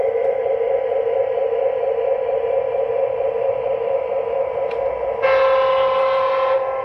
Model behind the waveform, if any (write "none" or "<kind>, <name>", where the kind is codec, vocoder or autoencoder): none